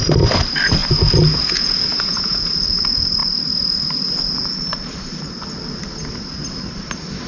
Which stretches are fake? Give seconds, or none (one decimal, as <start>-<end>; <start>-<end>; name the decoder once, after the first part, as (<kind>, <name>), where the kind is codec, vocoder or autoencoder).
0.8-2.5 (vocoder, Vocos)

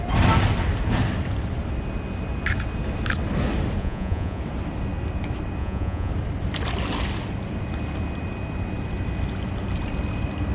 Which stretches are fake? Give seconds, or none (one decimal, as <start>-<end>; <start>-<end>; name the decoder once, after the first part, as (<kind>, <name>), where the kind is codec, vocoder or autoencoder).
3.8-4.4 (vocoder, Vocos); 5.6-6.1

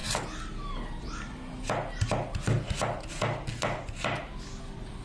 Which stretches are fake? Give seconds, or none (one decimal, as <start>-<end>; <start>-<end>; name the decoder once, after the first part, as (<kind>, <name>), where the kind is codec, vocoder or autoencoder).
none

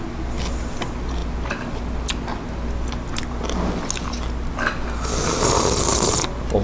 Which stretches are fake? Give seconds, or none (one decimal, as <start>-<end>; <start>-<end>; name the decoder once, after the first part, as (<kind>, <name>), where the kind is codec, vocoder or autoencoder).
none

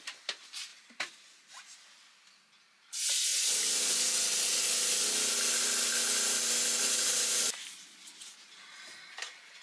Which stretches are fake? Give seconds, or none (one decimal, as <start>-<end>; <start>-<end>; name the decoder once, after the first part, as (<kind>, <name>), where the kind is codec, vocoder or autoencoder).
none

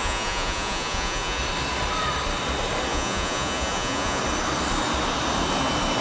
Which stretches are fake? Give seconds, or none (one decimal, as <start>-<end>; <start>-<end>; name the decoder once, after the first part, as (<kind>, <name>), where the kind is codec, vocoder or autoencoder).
0.0-1.4 (vocoder, Vocos); 2.9-4.2